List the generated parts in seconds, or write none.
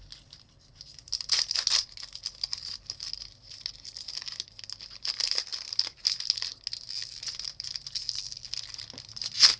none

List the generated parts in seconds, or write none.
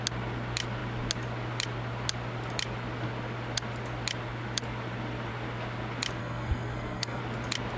6.2-7.2 (codec, SNAC)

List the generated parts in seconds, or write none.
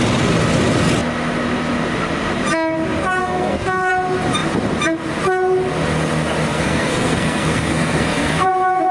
3.2-3.9 (codec, SNAC); 6.5-8.5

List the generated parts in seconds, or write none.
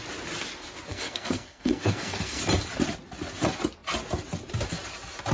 0.9-2.4 (codec, SNAC)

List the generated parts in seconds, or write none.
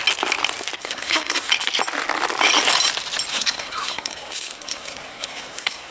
0.8-1.5 (codec, SNAC); 3.3-5.9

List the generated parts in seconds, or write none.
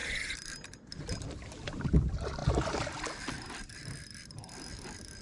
none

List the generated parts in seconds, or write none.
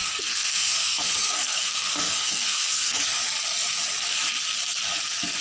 0.0-3.2 (codec, SNAC)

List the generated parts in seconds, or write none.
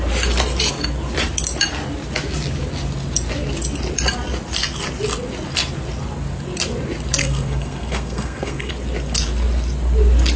7.2-8.7 (codec, SNAC)